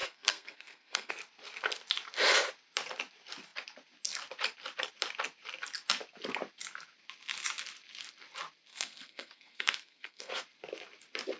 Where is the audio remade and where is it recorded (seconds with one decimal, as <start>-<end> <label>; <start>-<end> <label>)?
0.0-1.1 remade; 1.1-8.7 recorded; 8.7-10.3 remade; 10.3-11.4 recorded